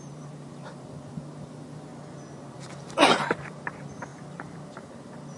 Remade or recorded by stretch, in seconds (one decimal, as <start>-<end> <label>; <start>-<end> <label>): 0.0-1.9 remade; 1.9-2.5 recorded; 2.5-5.4 remade